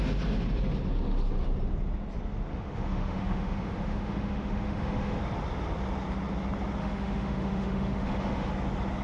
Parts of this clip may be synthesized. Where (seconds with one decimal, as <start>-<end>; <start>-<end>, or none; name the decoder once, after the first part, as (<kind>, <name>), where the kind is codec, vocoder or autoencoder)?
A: 2.5-5.2 (autoencoder, DAC-VAE); 6.8-8.5